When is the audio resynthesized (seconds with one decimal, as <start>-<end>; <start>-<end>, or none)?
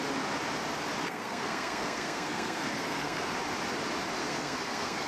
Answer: 1.0-3.3; 4.2-5.1